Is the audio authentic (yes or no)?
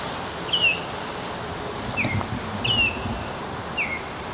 yes